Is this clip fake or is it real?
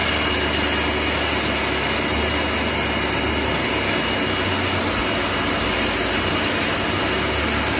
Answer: real